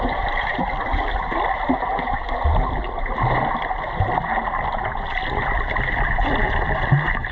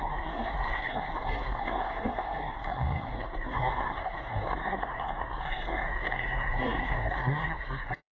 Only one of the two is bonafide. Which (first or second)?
first